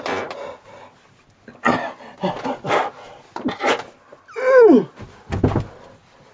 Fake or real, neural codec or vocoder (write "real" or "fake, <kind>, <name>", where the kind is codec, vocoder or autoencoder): real